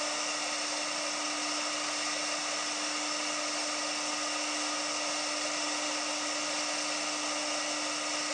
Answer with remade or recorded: recorded